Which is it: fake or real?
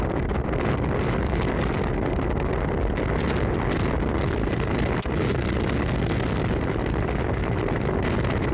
real